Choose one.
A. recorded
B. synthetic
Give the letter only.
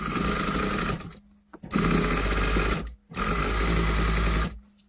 A